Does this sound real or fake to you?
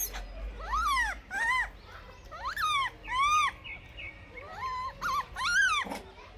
real